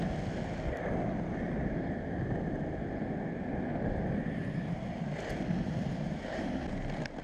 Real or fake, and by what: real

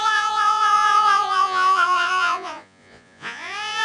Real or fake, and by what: fake, vocoder, Vocos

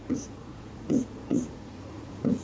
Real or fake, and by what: fake, vocoder, Vocos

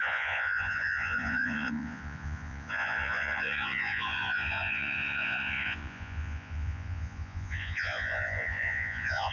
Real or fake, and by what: fake, vocoder, Vocos